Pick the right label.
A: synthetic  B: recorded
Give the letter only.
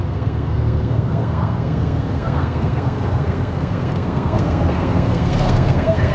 A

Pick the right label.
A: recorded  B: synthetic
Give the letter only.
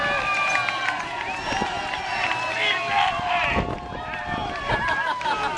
A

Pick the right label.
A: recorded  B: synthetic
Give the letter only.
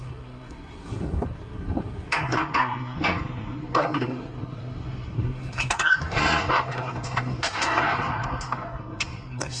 B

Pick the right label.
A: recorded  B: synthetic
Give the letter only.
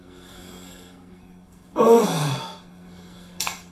B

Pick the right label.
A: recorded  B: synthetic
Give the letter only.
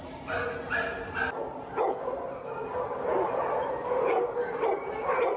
A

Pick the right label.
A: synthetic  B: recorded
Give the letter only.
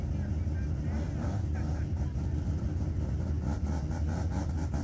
B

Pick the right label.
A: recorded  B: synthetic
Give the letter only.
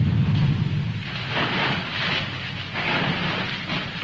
A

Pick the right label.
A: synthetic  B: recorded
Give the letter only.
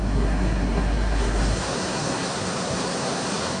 A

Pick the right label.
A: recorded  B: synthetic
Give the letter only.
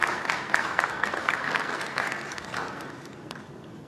B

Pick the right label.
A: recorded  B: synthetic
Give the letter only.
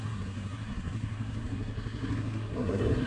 B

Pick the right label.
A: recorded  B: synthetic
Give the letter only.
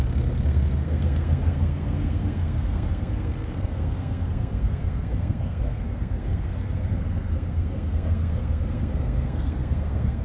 B